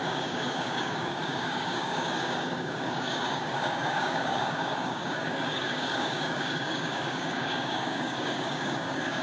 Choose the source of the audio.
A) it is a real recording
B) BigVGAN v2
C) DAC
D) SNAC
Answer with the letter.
C